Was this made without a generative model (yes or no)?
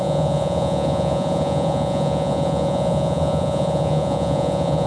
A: no